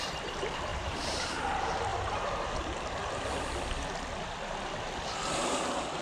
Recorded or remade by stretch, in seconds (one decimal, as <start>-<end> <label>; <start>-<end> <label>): 0.0-0.7 recorded; 0.7-1.4 remade; 1.4-1.9 recorded; 1.9-2.5 remade; 2.5-6.0 recorded